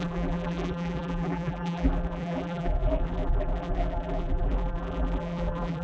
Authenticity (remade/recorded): remade